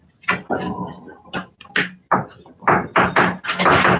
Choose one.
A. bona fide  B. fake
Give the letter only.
A